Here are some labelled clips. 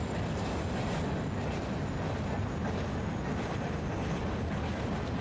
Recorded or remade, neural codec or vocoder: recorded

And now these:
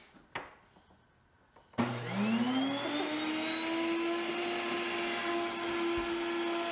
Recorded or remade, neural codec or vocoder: recorded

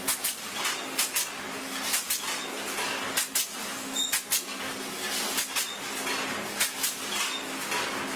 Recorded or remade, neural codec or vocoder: recorded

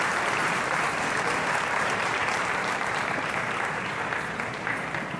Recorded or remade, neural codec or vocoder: remade, vocoder, BigVGAN v2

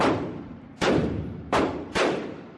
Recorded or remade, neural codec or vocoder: remade, vocoder, BigVGAN v2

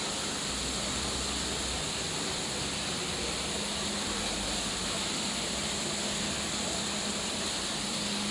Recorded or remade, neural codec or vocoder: recorded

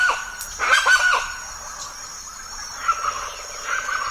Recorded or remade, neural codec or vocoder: recorded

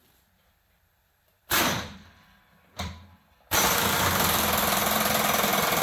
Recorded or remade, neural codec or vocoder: remade, vocoder, BigVGAN v2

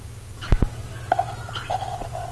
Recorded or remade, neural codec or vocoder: recorded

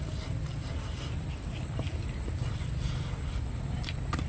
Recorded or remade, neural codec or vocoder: recorded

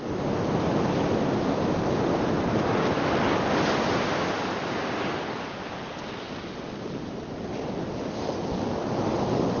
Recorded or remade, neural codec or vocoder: recorded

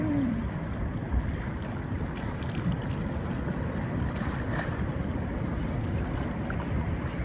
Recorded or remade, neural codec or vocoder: remade, vocoder, BigVGAN v2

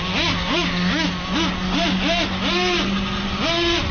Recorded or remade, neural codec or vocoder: recorded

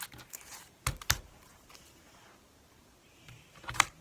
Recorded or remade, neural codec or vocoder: remade, vocoder, BigVGAN v2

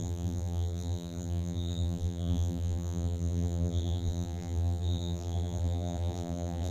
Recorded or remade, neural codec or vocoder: remade, vocoder, BigVGAN v2